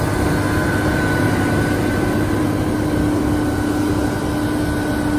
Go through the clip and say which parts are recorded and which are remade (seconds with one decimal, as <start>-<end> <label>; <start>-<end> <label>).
0.0-5.2 recorded